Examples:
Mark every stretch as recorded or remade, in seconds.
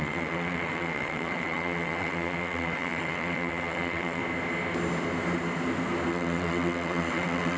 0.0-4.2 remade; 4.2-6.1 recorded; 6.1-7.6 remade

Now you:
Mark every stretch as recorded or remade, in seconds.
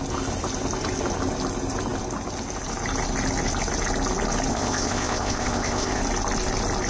0.0-4.5 recorded; 4.5-6.0 remade; 6.0-6.9 recorded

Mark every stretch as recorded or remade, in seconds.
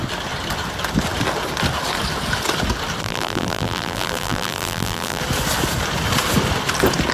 0.0-3.0 recorded; 3.0-5.2 remade; 5.2-7.1 recorded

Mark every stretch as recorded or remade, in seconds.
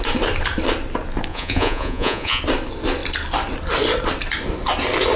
0.0-1.3 recorded; 1.3-2.4 remade; 2.4-5.2 recorded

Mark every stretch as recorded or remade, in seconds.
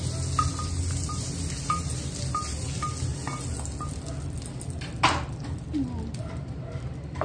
0.0-7.2 recorded